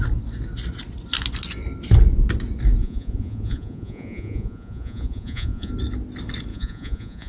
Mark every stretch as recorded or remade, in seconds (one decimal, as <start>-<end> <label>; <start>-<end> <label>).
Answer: 0.0-2.8 recorded; 2.8-5.7 remade; 5.7-6.5 recorded; 6.5-7.3 remade